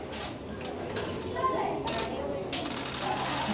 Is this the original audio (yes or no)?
yes